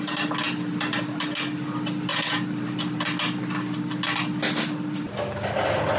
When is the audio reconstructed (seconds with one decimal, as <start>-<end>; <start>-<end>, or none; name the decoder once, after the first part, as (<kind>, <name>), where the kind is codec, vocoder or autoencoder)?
none